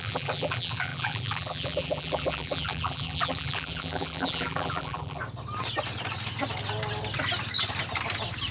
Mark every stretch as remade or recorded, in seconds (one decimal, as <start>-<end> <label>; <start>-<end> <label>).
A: 0.0-5.2 remade; 5.2-8.5 recorded